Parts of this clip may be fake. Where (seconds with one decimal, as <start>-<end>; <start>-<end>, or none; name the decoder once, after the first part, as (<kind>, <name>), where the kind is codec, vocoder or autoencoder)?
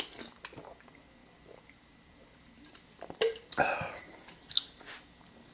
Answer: 1.2-4.5 (vocoder, BigVGAN v2)